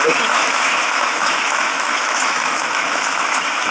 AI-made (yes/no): yes